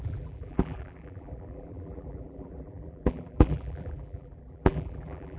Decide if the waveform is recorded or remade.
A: remade